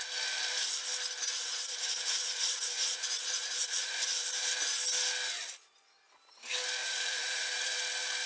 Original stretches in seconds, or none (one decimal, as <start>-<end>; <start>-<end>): 0.0-1.3; 4.5-6.8; 7.8-8.3